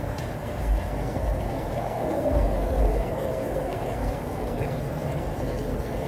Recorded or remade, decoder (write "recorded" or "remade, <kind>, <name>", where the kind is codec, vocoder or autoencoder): remade, codec, SNAC